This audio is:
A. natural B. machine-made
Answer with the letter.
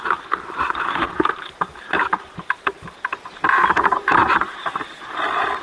B